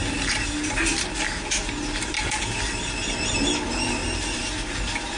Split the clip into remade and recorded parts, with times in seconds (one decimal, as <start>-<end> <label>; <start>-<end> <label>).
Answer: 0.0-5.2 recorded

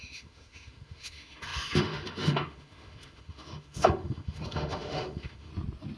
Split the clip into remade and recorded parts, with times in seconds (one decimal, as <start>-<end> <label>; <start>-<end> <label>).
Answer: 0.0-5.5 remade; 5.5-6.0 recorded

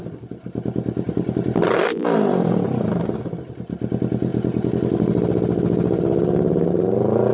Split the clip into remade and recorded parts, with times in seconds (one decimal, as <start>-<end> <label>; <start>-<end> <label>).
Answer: 0.0-7.3 recorded

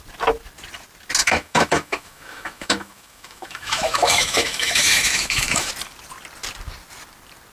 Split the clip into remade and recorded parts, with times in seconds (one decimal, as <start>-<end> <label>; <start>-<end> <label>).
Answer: 0.0-1.2 recorded; 1.2-5.7 remade; 5.7-7.5 recorded

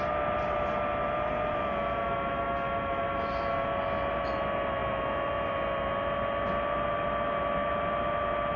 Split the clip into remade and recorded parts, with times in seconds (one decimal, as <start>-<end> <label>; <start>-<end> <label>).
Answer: 0.0-8.6 recorded